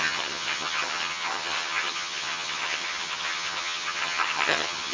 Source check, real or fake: fake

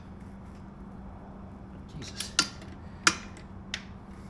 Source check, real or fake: real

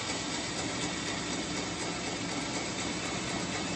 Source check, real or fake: real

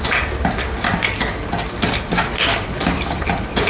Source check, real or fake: real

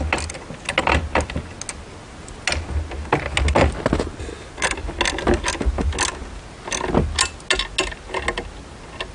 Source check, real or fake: real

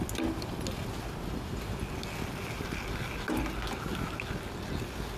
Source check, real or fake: real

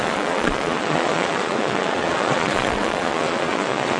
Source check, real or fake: fake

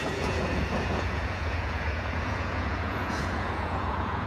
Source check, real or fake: fake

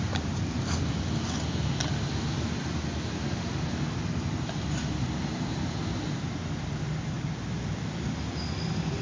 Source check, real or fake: real